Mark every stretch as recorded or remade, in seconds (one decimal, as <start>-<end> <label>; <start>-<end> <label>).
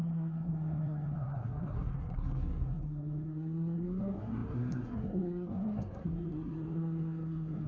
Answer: 0.0-7.7 remade